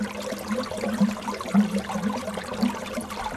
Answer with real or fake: real